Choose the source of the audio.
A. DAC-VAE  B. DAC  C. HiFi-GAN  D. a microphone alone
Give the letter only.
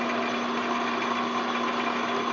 D